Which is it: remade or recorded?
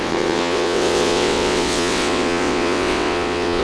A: remade